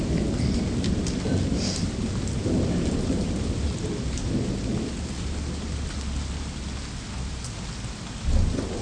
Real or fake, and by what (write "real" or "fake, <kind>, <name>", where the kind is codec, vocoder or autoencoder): real